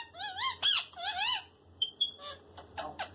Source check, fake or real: fake